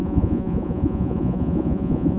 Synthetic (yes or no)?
yes